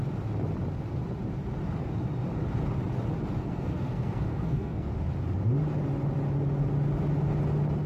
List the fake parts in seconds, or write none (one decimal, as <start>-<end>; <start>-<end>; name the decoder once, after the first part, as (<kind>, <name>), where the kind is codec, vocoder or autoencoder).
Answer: 3.4-4.9 (codec, SNAC)